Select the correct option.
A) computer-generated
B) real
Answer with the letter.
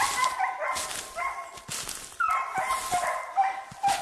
B